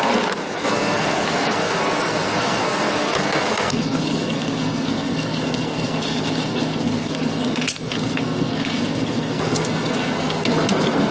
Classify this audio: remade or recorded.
remade